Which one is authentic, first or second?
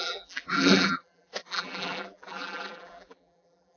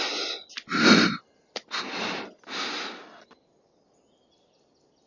second